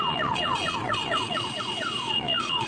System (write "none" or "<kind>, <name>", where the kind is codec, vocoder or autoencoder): vocoder, Vocos